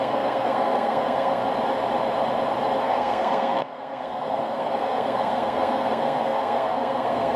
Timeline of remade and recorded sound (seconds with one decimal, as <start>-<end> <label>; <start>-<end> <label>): 0.0-1.4 remade; 1.4-2.8 recorded; 2.8-7.4 remade